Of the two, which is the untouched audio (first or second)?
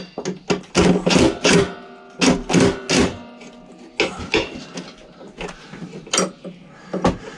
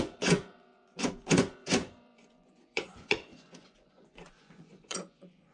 first